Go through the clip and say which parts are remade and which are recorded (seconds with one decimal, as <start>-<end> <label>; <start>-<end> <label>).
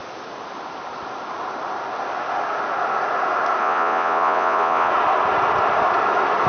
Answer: 0.0-3.6 recorded; 3.6-4.9 remade; 4.9-6.5 recorded